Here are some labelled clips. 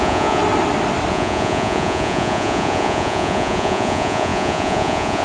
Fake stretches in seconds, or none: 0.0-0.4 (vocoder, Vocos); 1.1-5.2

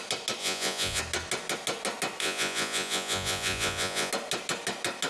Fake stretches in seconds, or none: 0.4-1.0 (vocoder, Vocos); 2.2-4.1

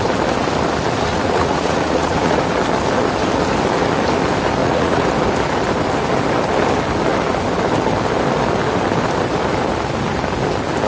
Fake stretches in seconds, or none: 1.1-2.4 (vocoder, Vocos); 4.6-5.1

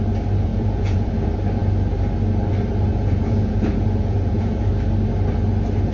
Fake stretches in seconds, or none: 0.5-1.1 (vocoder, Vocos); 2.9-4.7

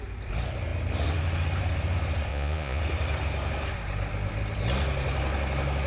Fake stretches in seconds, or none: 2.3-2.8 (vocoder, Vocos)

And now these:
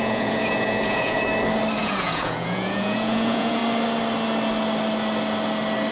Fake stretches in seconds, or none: 0.0-1.3 (vocoder, Vocos); 1.8-3.6

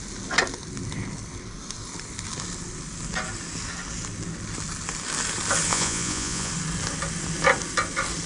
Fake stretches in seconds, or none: 5.7-6.5 (vocoder, Vocos)

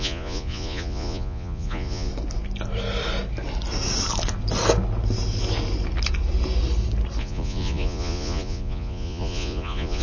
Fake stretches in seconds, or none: 0.0-2.1 (vocoder, Vocos); 7.2-10.0